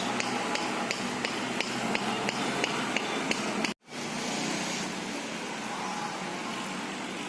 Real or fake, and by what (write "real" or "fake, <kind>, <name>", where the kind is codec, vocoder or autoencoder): real